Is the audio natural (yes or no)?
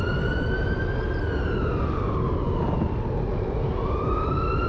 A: yes